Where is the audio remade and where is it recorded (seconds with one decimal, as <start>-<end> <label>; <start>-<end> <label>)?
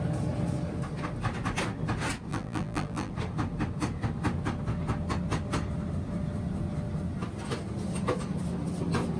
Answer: 0.0-2.3 recorded; 2.3-3.1 remade; 3.1-9.2 recorded